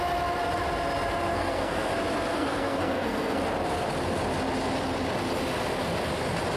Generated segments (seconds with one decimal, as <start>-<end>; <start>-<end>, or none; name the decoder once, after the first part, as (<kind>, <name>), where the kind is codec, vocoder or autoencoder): 1.3-1.9 (codec, SNAC); 2.3-3.4